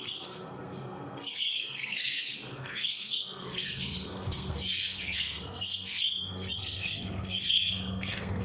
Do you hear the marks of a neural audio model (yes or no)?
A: yes